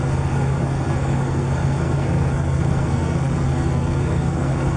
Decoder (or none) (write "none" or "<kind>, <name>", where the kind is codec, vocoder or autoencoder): codec, SNAC